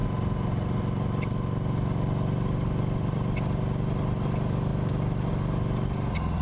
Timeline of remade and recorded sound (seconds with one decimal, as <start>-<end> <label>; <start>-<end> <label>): 0.0-0.8 remade; 0.8-6.4 recorded